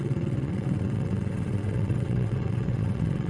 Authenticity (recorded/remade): remade